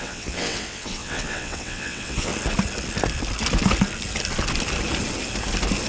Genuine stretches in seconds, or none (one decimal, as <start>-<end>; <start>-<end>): 2.3-5.9